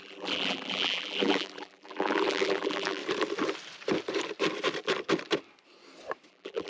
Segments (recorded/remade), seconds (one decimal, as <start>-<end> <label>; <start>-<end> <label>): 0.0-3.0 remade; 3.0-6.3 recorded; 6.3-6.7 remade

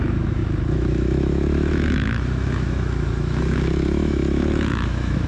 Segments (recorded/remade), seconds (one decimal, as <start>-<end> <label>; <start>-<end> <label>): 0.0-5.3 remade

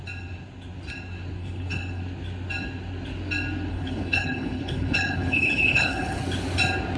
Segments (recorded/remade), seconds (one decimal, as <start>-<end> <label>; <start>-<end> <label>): 0.0-1.4 recorded; 1.4-2.0 remade; 2.0-3.7 recorded; 3.7-6.2 remade; 6.2-7.0 recorded

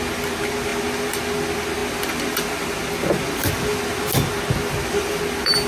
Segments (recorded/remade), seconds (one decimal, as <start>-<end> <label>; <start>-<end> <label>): 0.0-5.7 recorded

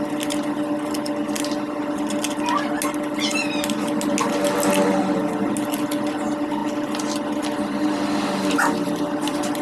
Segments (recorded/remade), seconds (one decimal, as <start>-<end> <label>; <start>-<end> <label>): 0.0-9.6 recorded

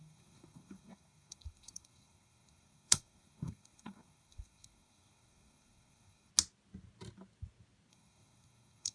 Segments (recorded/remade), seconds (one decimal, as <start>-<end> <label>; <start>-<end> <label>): 0.0-6.3 remade; 6.3-7.9 recorded; 7.9-8.9 remade

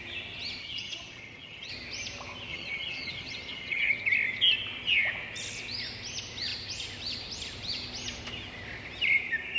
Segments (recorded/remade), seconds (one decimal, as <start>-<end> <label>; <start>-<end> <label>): 0.0-0.6 recorded; 0.6-1.7 remade; 1.7-2.5 recorded; 2.5-3.9 remade; 3.9-9.6 recorded

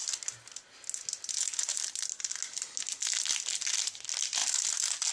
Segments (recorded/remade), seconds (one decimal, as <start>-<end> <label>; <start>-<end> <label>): 0.0-5.1 recorded